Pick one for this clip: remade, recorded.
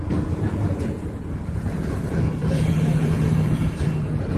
remade